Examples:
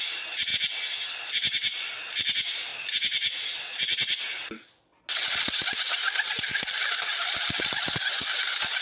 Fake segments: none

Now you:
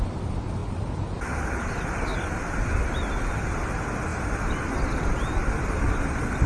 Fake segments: 0.0-0.6 (vocoder, BigVGAN v2); 1.7-2.1; 3.3-6.5

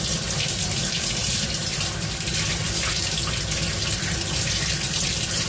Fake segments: none

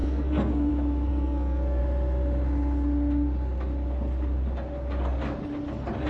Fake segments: 0.0-0.7 (codec, SNAC); 1.1-1.8

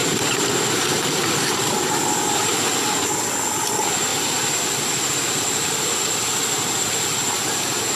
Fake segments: 0.0-1.9 (vocoder, BigVGAN v2); 4.1-4.9; 7.3-8.0

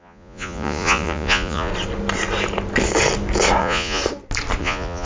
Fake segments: 0.0-1.7 (vocoder, Vocos); 3.6-4.0; 4.6-5.1